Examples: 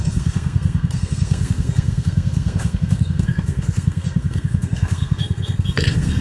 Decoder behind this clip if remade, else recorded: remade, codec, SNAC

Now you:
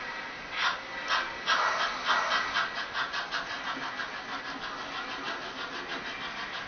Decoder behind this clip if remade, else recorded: recorded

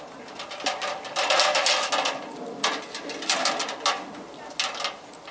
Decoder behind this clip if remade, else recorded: recorded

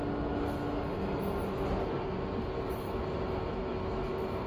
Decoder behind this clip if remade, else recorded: recorded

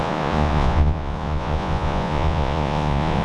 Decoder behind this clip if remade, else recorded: remade, vocoder, Vocos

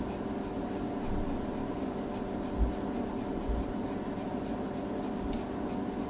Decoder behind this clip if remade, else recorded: recorded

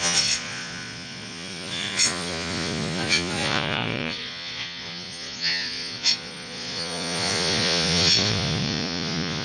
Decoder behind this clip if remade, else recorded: remade, vocoder, Vocos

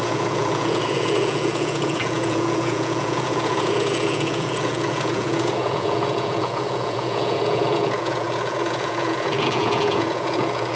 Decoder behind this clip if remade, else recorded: remade, vocoder, Vocos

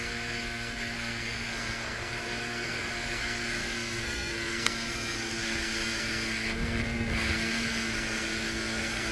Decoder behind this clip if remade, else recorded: remade, codec, SNAC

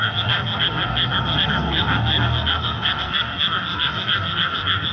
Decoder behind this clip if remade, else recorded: remade, codec, SNAC